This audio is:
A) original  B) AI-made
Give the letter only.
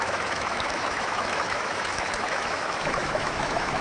B